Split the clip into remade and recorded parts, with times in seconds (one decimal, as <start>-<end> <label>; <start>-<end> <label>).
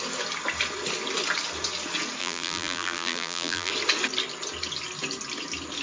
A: 0.0-2.2 recorded; 2.2-3.7 remade; 3.7-5.8 recorded